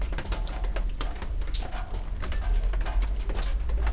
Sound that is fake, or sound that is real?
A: real